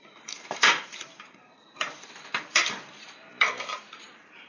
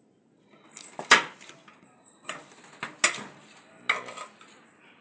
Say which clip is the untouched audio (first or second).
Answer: second